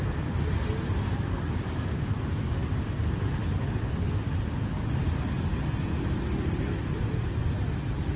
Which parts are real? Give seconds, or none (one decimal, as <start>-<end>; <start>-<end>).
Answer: 0.0-8.2